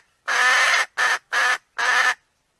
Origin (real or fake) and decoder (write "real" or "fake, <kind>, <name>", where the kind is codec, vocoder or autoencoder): real